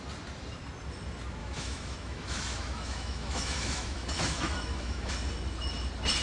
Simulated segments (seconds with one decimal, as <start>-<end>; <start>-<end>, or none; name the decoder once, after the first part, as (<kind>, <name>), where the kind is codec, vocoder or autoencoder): 1.4-5.1 (autoencoder, DAC-VAE)